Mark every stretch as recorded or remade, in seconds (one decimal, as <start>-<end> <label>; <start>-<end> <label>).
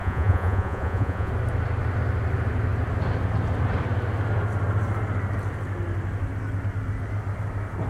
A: 0.0-1.3 remade; 1.3-7.9 recorded